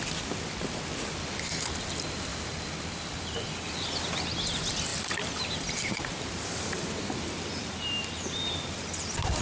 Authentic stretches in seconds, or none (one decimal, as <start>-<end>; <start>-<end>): 0.0-2.3; 4.0-9.4